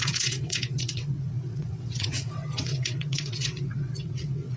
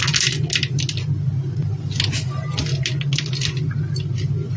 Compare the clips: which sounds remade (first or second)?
first